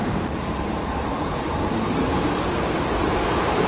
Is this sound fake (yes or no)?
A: yes